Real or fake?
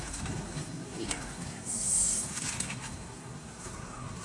fake